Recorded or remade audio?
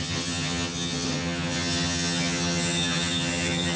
remade